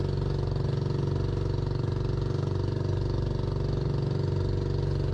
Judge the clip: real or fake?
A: real